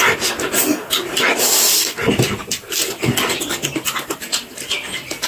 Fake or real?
real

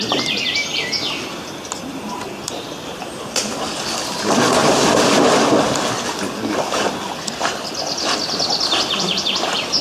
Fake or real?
real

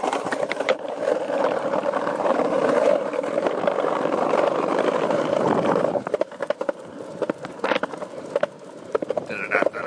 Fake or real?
fake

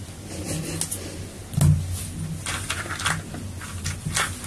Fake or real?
real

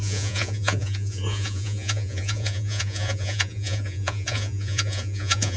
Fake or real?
fake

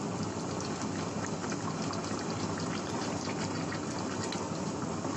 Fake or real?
real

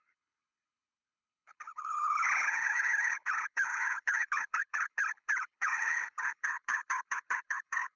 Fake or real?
fake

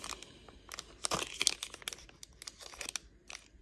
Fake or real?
real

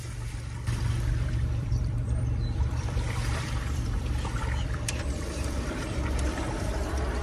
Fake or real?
fake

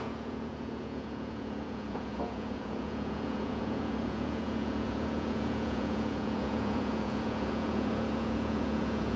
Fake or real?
fake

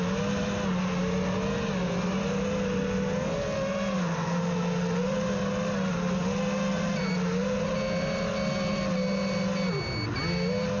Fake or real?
real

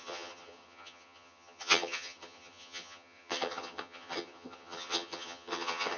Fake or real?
fake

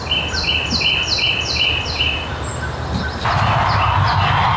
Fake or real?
real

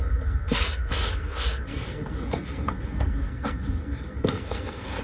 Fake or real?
fake